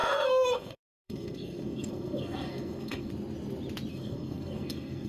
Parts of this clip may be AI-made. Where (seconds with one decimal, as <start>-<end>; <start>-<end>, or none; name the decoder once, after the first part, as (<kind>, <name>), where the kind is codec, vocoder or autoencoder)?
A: 0.0-3.1 (codec, SNAC); 3.9-5.1